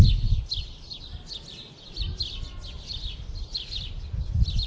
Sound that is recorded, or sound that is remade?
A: recorded